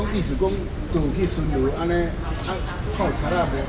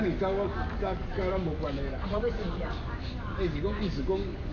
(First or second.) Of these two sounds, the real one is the first